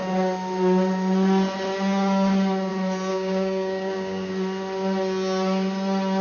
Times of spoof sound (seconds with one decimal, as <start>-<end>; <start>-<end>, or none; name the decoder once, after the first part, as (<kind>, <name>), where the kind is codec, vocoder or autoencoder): 3.1-4.3 (codec, DAC)